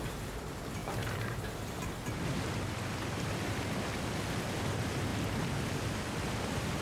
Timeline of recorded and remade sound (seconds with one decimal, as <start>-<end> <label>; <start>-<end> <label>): 0.0-6.8 recorded